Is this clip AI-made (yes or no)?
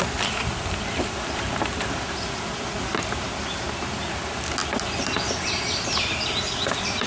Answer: no